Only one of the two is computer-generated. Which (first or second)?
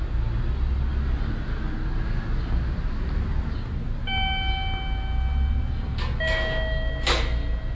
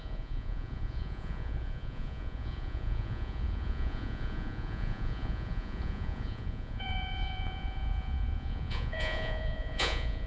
second